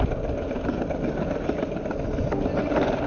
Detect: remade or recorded recorded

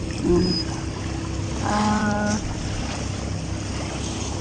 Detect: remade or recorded remade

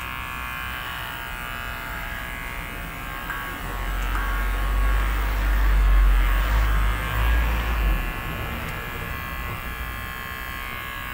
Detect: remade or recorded recorded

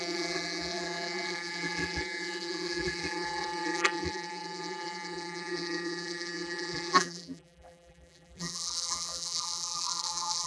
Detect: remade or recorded remade